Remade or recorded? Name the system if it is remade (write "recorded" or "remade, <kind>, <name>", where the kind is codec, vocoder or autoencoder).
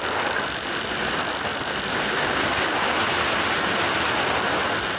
recorded